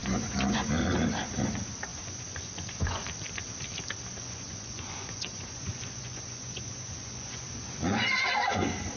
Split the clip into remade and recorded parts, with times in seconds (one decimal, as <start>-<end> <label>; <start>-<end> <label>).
0.0-0.7 remade; 0.7-1.9 recorded; 1.9-3.0 remade; 3.0-4.2 recorded; 4.2-8.0 remade; 8.0-9.0 recorded